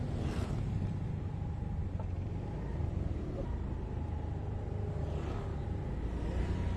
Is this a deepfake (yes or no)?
no